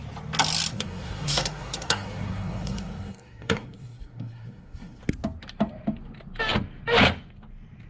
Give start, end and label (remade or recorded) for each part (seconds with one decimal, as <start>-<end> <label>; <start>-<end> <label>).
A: 0.0-0.7 recorded; 0.7-5.0 remade; 5.0-7.9 recorded